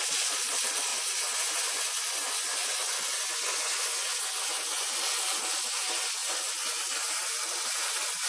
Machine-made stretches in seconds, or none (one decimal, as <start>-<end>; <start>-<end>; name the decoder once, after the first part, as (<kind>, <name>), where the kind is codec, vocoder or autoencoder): 0.9-5.0 (vocoder, Vocos); 6.2-6.8